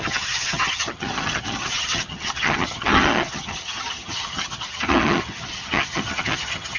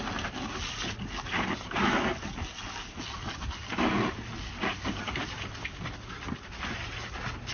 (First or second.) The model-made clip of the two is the first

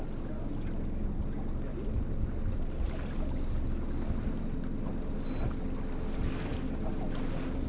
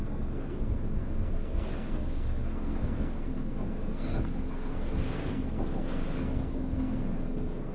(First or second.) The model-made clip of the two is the second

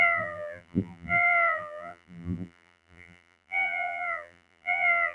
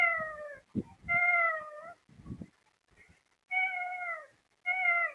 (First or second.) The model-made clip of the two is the first